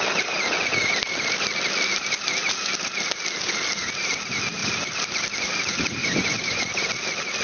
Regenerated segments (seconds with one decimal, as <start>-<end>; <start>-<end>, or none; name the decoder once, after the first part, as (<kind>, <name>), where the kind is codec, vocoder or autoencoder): 6.0-6.6 (vocoder, Vocos)